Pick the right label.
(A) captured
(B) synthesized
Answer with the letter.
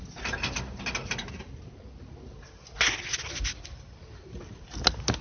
A